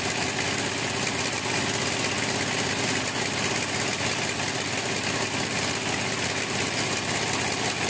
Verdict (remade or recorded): recorded